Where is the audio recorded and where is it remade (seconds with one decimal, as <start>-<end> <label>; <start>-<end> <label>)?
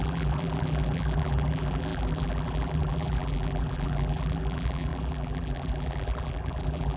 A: 0.0-7.0 remade